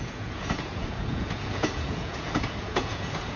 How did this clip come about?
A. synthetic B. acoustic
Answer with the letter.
A